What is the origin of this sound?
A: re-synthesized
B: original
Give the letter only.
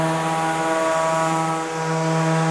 B